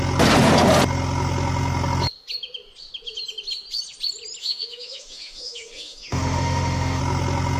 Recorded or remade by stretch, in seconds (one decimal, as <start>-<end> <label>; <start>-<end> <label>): 0.0-4.4 recorded; 4.4-7.0 remade; 7.0-7.6 recorded